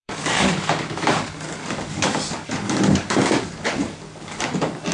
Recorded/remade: remade